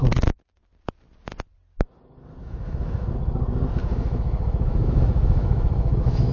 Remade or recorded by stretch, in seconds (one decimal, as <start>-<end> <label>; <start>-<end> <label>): 0.0-2.4 recorded; 2.4-3.1 remade; 3.1-3.8 recorded; 3.8-6.3 remade